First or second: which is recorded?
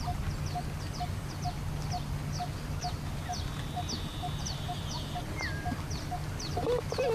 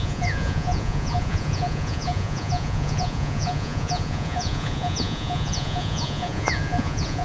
first